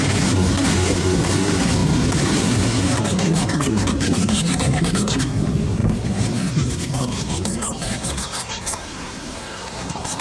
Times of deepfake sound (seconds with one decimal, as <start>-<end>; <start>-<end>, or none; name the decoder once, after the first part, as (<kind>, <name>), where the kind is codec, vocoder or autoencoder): 0.0-10.2 (codec, SNAC)